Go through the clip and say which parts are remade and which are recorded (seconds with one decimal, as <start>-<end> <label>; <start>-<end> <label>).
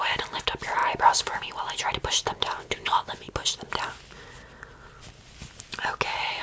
0.0-2.2 recorded; 2.2-3.3 remade; 3.3-6.4 recorded